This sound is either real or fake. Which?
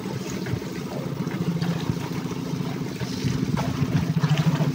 real